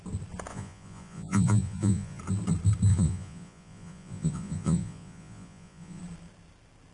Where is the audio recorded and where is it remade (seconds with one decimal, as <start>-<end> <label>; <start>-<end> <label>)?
0.0-0.5 recorded; 0.5-2.2 remade; 2.2-2.9 recorded; 2.9-6.0 remade; 6.0-6.9 recorded